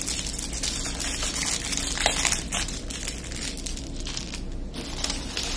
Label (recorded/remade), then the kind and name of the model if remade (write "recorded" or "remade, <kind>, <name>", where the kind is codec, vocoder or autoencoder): recorded